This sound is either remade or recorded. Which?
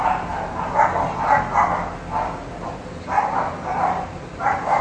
recorded